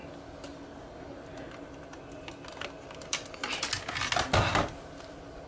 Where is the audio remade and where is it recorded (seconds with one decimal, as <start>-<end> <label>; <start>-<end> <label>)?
0.0-5.5 recorded